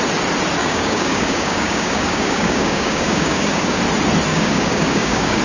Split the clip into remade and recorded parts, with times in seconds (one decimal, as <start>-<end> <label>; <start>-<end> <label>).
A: 0.0-0.6 recorded; 0.6-3.8 remade; 3.8-4.3 recorded; 4.3-5.4 remade

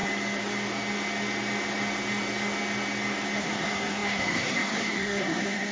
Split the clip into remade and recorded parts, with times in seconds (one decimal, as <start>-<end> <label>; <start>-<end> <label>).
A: 0.0-3.4 recorded; 3.4-5.7 remade

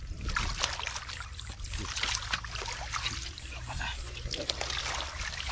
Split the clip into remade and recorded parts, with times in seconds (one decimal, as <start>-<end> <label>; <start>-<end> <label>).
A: 0.0-5.5 recorded

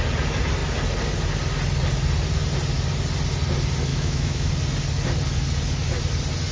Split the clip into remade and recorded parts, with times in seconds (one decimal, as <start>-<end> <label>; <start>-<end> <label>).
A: 0.0-3.9 recorded; 3.9-4.5 remade; 4.5-6.5 recorded

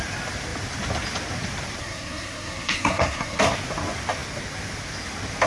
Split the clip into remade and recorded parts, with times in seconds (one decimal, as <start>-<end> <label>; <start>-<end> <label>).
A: 0.0-1.8 recorded; 1.8-3.4 remade; 3.4-5.5 recorded

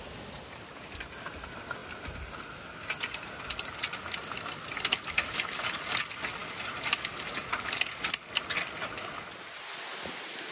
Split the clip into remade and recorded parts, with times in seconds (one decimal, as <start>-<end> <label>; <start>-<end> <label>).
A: 0.0-10.5 recorded

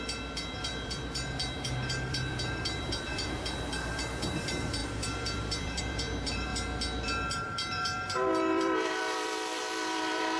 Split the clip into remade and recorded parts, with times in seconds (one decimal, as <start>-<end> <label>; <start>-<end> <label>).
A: 0.0-6.5 remade; 6.5-7.3 recorded; 7.3-10.4 remade